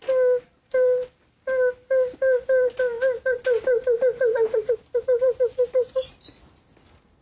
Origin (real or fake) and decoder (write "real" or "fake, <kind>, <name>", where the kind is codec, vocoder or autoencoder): real